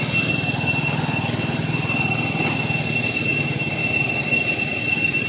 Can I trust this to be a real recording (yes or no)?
yes